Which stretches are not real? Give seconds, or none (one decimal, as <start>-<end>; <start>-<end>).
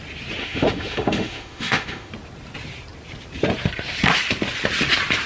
0.4-2.1